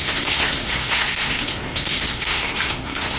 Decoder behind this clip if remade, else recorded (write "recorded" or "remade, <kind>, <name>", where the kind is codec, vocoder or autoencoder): remade, codec, SNAC